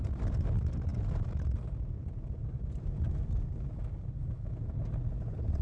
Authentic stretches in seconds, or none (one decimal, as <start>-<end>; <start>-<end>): 0.0-5.6